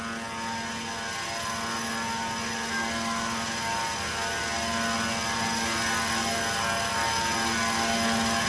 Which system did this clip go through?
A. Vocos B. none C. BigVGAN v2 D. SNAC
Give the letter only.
B